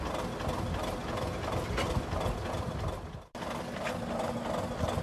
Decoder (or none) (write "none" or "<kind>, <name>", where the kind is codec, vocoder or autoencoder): none